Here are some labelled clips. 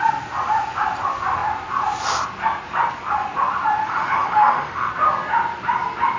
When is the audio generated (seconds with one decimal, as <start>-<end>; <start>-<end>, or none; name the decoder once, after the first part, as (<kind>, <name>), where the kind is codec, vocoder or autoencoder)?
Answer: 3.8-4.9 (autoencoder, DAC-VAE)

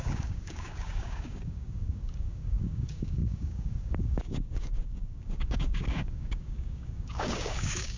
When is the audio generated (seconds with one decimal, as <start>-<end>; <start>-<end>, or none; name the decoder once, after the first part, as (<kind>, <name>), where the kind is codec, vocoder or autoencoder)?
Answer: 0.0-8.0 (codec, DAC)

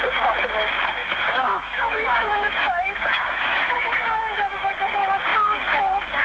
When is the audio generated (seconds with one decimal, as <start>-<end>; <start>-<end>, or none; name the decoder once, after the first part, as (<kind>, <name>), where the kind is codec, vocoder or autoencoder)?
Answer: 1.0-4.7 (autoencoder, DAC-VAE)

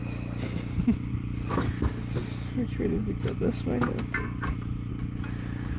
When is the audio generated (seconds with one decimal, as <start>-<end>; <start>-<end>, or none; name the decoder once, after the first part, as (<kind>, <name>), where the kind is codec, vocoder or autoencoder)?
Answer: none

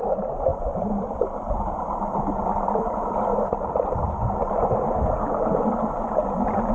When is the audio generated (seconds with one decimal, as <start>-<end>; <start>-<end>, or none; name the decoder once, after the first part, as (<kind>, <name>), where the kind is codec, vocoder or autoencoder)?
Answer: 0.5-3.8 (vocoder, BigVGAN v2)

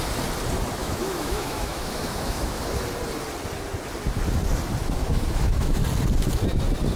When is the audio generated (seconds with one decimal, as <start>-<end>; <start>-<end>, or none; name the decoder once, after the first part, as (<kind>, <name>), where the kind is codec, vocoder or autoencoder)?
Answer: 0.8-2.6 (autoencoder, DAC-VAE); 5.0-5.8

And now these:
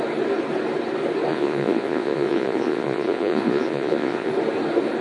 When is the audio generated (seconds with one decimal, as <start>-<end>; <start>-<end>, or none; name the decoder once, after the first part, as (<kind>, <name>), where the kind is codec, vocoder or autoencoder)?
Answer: 1.3-4.3 (vocoder, Vocos)